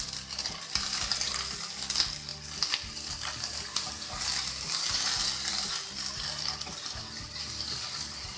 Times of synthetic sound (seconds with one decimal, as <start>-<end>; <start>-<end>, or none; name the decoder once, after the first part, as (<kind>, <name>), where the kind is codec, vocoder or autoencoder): none